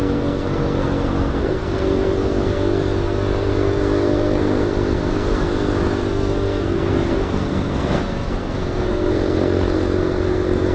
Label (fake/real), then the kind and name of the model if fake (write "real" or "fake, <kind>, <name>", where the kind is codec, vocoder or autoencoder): fake, codec, SNAC